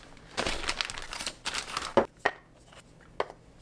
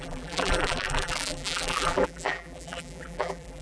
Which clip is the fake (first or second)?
second